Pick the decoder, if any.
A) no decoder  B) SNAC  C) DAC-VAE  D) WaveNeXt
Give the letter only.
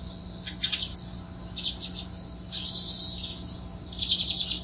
A